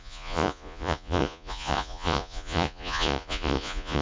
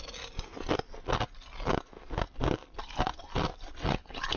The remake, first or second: first